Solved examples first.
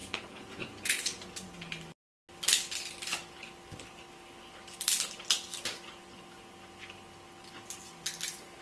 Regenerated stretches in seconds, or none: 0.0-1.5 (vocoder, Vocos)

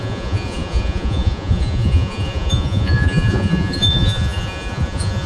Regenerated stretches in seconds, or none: 0.0-5.3 (vocoder, Vocos)

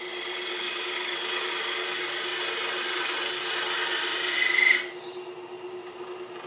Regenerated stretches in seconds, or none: 0.5-1.5 (autoencoder, DAC-VAE)

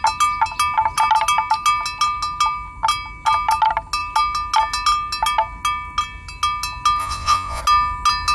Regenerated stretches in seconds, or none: 7.0-7.6 (vocoder, Vocos)

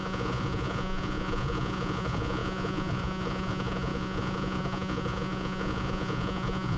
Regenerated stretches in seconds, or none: 0.0-6.8 (vocoder, Vocos)

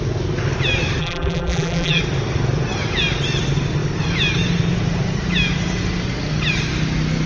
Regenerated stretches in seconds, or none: 1.0-2.0 (vocoder, BigVGAN v2)

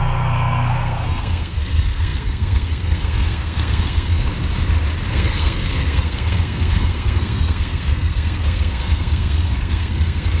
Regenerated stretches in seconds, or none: 0.0-4.3 (codec, SNAC); 5.1-10.4